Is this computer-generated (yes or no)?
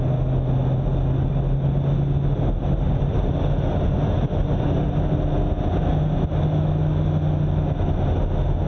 no